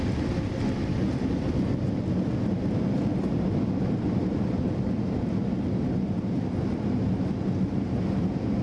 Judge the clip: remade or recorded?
recorded